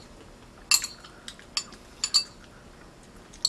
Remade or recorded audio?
recorded